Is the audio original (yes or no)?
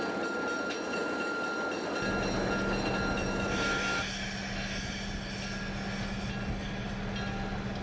yes